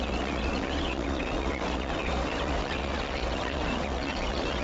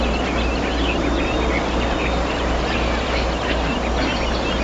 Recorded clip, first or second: second